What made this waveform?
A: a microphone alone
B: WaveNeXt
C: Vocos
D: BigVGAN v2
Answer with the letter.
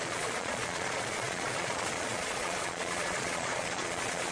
C